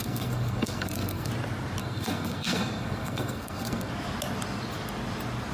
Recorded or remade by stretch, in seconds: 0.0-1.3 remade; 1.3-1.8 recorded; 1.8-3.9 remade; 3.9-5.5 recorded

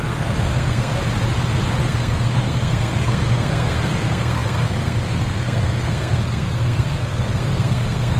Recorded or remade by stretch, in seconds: 0.0-0.9 remade; 0.9-1.8 recorded; 1.8-8.2 remade

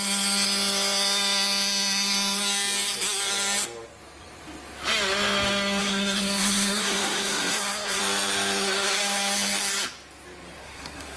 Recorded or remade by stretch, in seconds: 0.0-5.8 recorded; 5.8-8.0 remade; 8.0-10.6 recorded; 10.6-11.2 remade

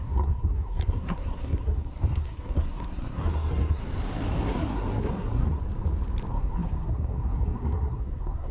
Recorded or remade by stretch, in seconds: 0.0-3.8 remade; 3.8-4.4 recorded; 4.4-5.6 remade; 5.6-6.3 recorded; 6.3-8.5 remade

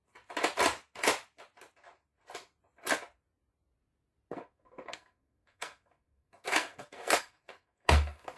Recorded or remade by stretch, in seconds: 0.0-4.3 recorded; 4.3-8.4 remade

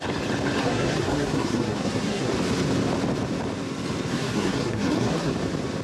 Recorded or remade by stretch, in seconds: 0.0-0.6 recorded; 0.6-2.3 remade; 2.3-4.1 recorded; 4.1-5.3 remade; 5.3-5.8 recorded

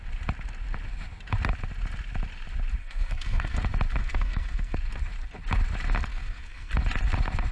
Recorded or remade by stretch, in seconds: 0.0-2.8 recorded; 2.8-3.6 remade; 3.6-4.0 recorded; 4.0-4.8 remade; 4.8-6.1 recorded; 6.1-6.7 remade; 6.7-7.5 recorded